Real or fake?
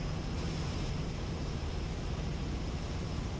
fake